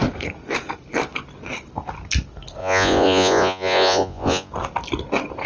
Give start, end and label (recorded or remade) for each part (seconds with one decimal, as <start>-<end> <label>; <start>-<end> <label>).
0.0-2.6 recorded; 2.6-4.5 remade; 4.5-5.5 recorded